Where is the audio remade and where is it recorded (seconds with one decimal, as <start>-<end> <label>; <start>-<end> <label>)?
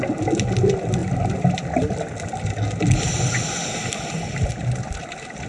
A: 0.0-4.5 recorded; 4.5-5.0 remade; 5.0-5.5 recorded